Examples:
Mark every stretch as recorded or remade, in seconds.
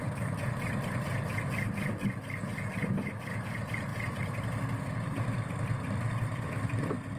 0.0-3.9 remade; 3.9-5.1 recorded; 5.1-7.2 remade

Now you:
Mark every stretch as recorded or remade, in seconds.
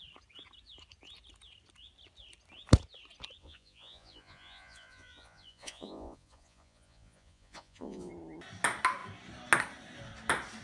0.0-3.4 recorded; 3.4-8.1 remade; 8.1-10.6 recorded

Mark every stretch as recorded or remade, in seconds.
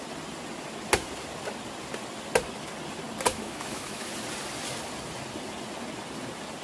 0.0-3.3 recorded; 3.3-4.1 remade; 4.1-6.6 recorded